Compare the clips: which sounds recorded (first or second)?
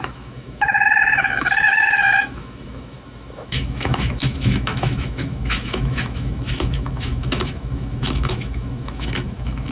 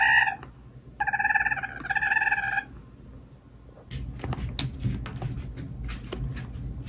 second